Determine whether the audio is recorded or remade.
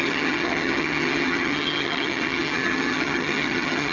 remade